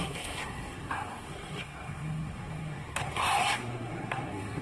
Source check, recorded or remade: remade